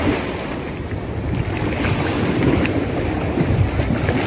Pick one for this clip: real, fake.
real